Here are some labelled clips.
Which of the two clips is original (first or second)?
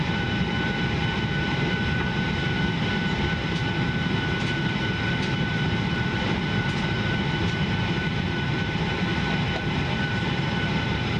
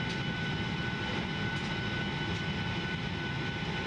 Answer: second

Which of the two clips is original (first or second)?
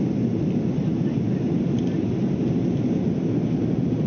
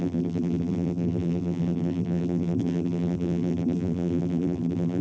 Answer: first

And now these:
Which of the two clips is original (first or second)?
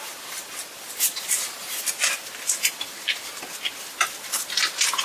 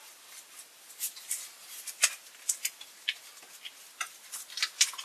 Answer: second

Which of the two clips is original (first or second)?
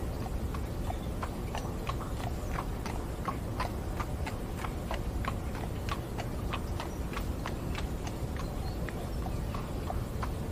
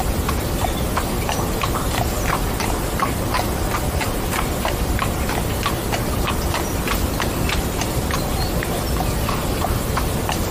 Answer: first